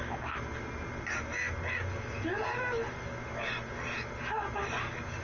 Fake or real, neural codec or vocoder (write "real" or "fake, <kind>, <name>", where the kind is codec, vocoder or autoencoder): real